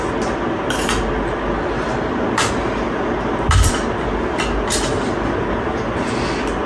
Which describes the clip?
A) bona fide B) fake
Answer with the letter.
A